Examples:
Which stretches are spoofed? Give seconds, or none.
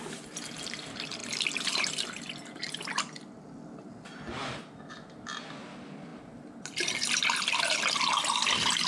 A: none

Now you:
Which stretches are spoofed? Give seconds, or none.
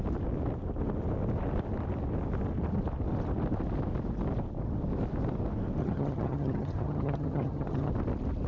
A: 5.8-7.9 (vocoder, HiFi-GAN)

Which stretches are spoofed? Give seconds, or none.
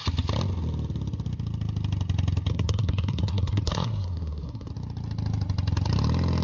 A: 2.5-4.7 (codec, SNAC)